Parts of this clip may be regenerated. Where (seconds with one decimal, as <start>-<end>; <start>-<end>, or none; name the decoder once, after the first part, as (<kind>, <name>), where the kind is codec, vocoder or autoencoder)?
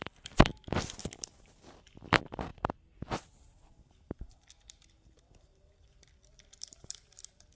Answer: 0.0-0.5 (vocoder, BigVGAN v2); 1.0-2.5; 4.6-7.6